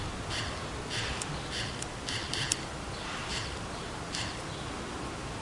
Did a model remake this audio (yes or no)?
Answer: no